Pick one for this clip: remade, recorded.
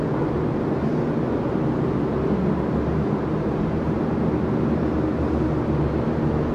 recorded